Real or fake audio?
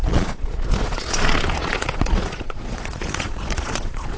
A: fake